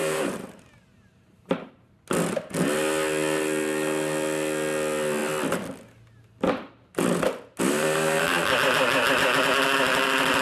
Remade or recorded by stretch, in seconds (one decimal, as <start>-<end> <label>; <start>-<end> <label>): 0.0-1.7 remade; 1.7-10.4 recorded